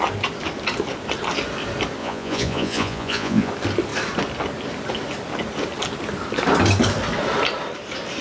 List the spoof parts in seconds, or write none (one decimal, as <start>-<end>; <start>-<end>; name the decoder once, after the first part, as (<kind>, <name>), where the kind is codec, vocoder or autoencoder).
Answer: 2.0-3.5 (vocoder, Vocos)